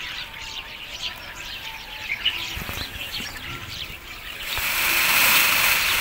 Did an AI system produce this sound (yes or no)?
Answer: yes